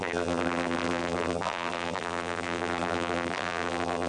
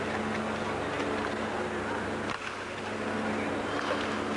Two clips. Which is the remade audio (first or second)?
first